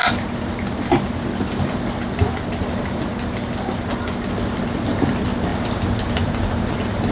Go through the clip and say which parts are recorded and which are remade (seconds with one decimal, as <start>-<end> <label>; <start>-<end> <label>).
0.0-7.1 recorded